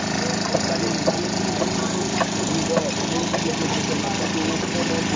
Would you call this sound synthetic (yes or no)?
no